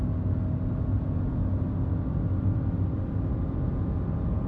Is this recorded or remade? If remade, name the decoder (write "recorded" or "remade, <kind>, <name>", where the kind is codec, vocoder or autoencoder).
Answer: recorded